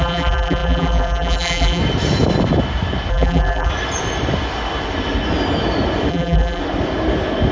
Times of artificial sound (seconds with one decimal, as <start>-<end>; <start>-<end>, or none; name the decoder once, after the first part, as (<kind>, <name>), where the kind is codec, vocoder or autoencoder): 0.0-1.8 (vocoder, BigVGAN v2); 3.1-3.7; 6.1-6.6